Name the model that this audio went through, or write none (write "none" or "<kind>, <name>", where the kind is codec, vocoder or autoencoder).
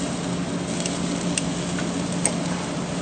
none